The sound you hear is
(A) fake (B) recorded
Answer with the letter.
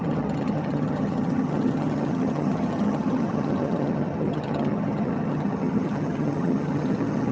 A